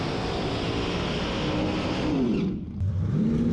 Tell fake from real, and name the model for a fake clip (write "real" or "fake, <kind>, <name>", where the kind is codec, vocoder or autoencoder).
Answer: real